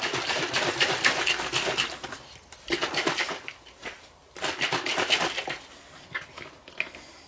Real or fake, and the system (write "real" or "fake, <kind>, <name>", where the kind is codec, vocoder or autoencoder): real